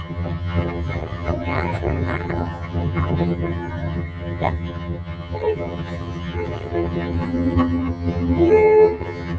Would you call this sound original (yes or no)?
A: no